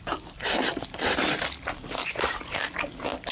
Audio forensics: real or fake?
real